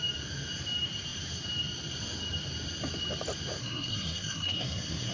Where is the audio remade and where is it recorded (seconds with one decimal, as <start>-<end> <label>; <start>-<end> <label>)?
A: 0.0-3.6 recorded; 3.6-5.1 remade